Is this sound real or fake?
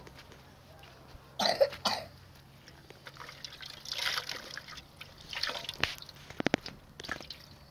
real